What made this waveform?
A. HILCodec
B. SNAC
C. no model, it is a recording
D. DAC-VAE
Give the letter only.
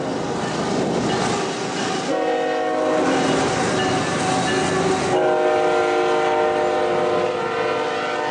C